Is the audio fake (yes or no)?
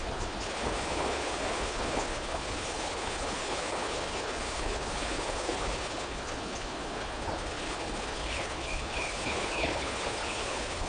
yes